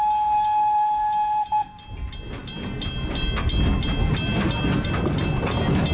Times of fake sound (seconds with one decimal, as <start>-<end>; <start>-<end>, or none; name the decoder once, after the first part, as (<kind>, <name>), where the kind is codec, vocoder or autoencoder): none